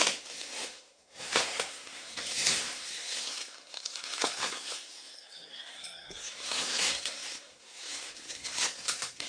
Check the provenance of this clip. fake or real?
fake